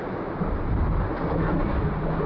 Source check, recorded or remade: remade